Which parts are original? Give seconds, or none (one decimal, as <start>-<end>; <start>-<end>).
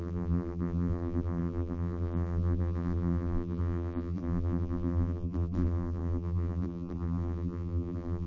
none